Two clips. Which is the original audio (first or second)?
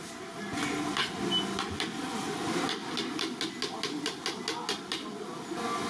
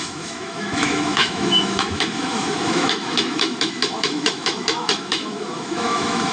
first